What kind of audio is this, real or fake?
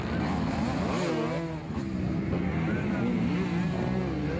real